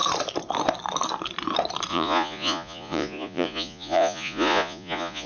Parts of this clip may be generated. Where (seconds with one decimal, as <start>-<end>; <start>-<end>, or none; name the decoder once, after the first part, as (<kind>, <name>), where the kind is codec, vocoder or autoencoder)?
1.9-5.3 (vocoder, Vocos)